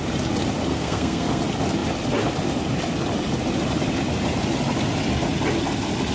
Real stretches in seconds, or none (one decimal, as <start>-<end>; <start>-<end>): 0.0-0.7; 1.4-6.1